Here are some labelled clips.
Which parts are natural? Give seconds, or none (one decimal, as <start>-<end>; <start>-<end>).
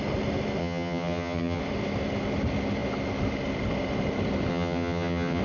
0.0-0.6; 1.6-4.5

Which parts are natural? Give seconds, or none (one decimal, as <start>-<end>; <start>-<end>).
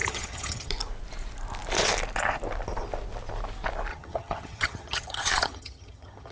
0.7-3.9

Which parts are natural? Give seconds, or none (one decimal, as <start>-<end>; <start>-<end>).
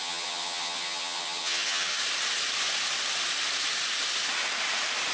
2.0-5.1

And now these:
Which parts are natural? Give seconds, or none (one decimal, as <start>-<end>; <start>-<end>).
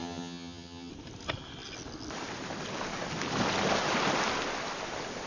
0.9-5.3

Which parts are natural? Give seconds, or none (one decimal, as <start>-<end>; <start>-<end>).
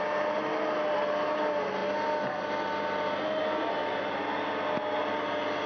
0.0-5.7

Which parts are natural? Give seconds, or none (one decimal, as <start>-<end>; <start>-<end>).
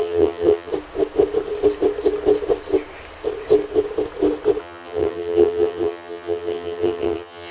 0.7-4.6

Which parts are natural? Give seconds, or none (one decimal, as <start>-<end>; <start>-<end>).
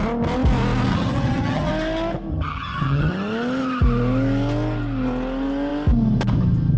0.0-0.9; 1.7-2.3; 3.1-6.8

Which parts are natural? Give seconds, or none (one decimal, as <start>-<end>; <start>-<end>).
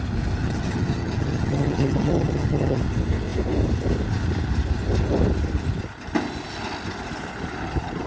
0.0-0.4; 2.8-8.1